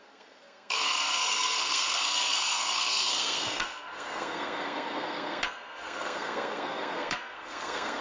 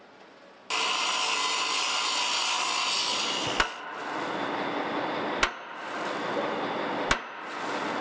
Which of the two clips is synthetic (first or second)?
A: first